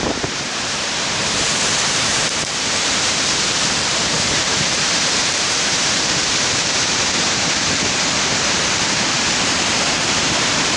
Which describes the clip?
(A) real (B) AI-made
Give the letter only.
B